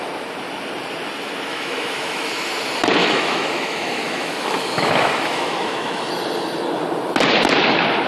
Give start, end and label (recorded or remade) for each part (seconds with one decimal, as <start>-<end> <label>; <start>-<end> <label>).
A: 0.0-1.5 recorded; 1.5-2.5 remade; 2.5-3.0 recorded; 3.0-6.1 remade; 6.1-8.1 recorded